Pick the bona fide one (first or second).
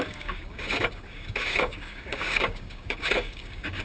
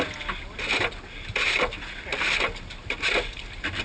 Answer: second